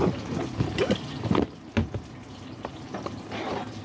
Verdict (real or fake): real